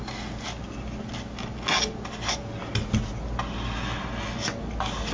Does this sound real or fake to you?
real